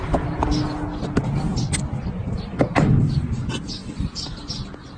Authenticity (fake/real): real